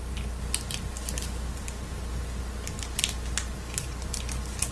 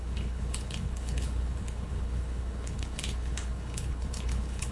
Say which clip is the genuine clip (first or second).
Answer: first